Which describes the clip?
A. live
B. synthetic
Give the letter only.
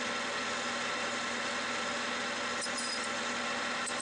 A